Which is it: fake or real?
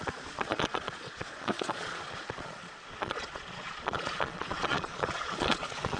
fake